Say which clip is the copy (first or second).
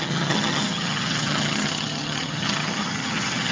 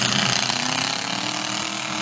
first